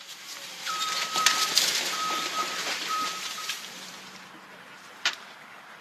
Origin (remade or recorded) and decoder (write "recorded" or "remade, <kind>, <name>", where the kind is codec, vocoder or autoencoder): remade, vocoder, BigVGAN v2